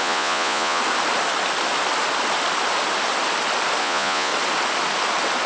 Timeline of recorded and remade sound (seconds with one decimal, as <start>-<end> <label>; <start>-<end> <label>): 0.0-0.8 remade; 0.8-3.8 recorded; 3.8-4.3 remade; 4.3-5.5 recorded